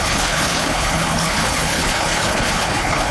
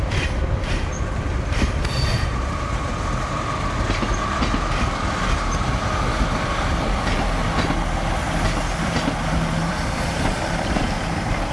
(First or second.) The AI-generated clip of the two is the first